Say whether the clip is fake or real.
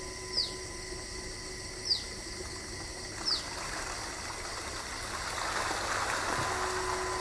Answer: real